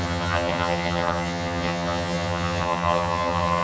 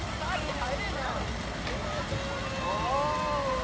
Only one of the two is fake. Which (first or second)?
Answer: first